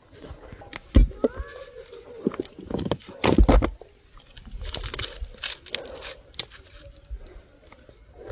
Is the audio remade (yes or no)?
no